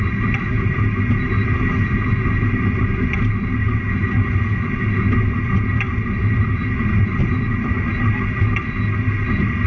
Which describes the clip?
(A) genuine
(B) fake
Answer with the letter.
A